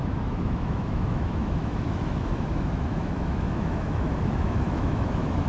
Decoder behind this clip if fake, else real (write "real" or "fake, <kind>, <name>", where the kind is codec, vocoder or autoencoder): fake, autoencoder, DAC-VAE